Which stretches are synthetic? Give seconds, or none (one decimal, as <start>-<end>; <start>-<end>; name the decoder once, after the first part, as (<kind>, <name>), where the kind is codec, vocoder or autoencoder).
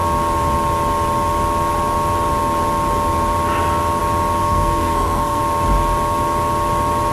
4.4-5.4 (codec, SNAC)